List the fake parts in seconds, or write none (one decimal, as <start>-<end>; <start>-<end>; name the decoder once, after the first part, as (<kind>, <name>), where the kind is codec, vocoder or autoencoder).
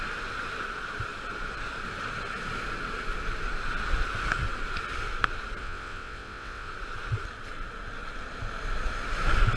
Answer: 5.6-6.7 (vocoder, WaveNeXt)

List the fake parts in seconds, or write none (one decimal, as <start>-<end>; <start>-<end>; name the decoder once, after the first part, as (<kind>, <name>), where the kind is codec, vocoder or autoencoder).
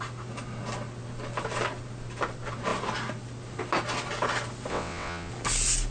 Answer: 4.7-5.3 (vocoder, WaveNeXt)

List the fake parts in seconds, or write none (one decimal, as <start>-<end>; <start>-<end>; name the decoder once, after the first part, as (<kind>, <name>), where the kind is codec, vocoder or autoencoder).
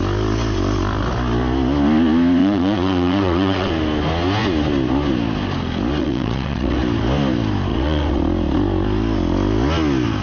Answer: 2.4-3.7 (vocoder, WaveNeXt); 6.0-6.8; 7.7-8.2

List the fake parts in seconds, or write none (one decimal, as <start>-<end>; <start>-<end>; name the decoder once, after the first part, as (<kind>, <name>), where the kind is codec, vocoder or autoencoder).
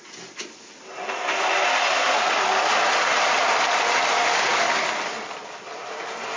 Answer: none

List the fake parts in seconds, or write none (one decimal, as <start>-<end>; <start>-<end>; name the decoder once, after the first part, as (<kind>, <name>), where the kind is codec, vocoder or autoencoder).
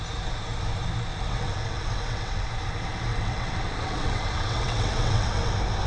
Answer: 1.1-2.5 (vocoder, WaveNeXt); 3.1-5.5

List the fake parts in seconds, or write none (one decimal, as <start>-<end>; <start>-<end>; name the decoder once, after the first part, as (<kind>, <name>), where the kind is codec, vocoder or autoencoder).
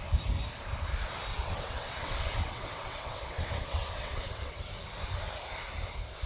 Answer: 1.3-4.6 (vocoder, WaveNeXt)